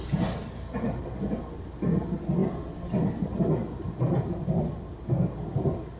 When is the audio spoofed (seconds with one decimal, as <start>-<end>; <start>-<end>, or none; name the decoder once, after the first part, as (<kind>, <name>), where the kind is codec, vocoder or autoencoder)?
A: none